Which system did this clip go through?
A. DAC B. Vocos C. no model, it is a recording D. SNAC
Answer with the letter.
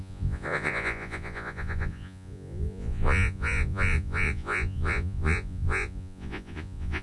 B